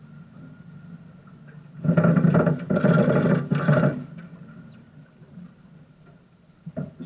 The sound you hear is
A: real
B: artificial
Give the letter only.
A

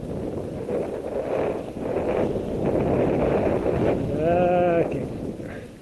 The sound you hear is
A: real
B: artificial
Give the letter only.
A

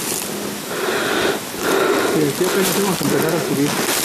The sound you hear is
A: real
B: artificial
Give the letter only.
A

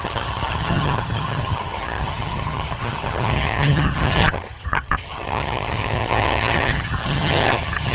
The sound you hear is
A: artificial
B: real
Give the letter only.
A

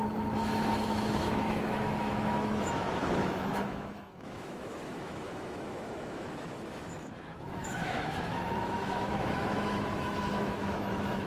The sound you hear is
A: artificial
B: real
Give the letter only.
A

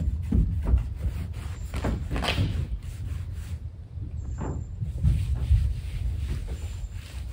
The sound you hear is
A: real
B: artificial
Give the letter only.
A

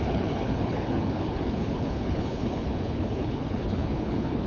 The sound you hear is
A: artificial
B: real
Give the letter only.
A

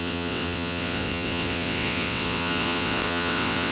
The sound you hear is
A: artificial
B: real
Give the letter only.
A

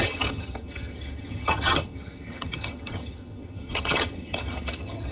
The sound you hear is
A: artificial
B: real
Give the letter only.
A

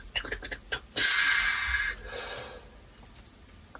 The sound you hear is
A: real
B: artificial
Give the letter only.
A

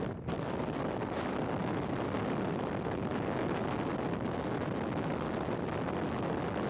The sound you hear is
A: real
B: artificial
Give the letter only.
A